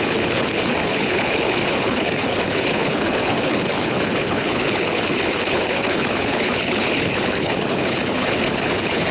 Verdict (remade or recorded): remade